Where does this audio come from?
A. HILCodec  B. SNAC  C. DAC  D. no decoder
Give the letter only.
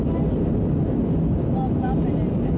D